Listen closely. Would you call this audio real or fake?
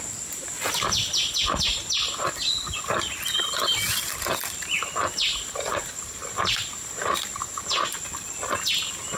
real